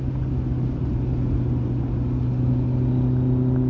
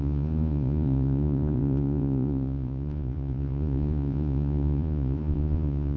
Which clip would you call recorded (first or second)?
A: first